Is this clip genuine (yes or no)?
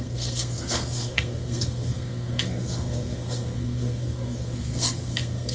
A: no